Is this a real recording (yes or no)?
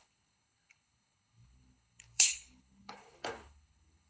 no